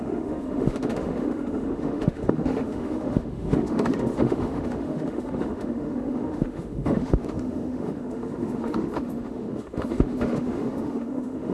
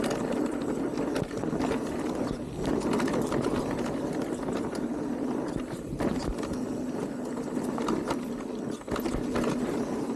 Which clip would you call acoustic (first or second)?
second